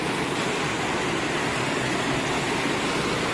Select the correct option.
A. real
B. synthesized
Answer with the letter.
A